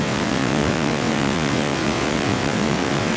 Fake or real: fake